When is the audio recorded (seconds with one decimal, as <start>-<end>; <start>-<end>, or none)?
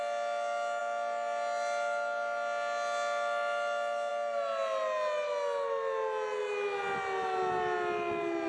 0.0-8.5